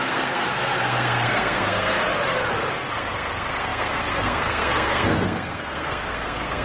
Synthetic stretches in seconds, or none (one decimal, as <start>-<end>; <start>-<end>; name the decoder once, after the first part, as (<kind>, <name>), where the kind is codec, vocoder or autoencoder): 0.0-2.0 (codec, SNAC); 2.9-6.6

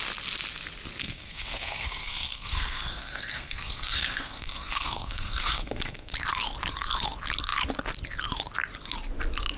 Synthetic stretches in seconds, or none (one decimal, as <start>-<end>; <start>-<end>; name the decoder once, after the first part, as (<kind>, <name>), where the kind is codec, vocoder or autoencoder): 1.0-6.1 (codec, SNAC)